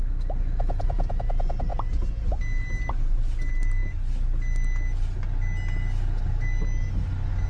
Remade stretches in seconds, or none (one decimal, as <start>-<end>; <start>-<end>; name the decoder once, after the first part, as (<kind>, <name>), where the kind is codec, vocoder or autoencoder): none